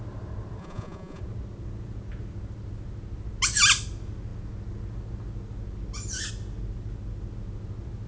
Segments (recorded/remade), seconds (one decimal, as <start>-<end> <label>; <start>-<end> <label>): 0.0-0.6 recorded; 0.6-1.2 remade; 1.2-8.1 recorded